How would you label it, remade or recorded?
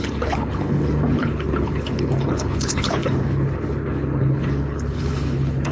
remade